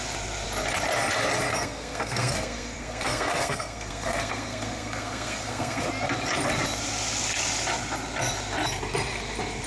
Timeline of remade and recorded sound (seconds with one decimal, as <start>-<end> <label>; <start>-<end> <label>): 0.0-1.5 recorded; 1.5-5.8 remade; 5.8-9.7 recorded